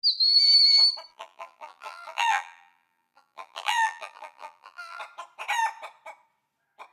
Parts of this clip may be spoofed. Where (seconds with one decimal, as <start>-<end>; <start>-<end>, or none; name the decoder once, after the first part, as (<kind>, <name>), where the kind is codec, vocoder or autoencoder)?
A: 1.1-5.0 (vocoder, BigVGAN v2)